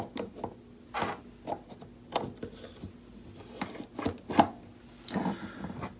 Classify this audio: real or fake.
real